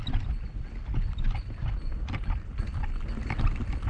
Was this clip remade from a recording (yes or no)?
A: no